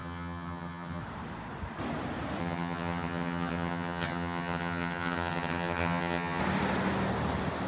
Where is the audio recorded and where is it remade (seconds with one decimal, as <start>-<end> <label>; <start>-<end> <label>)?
0.0-1.0 remade; 1.0-2.4 recorded; 2.4-6.4 remade; 6.4-7.7 recorded